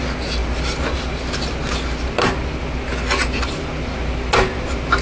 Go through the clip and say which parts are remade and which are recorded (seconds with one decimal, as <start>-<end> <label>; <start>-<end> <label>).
0.0-5.0 recorded